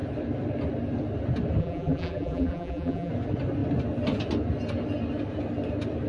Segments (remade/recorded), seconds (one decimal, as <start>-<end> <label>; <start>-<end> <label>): 0.0-1.6 recorded; 1.6-3.1 remade; 3.1-6.1 recorded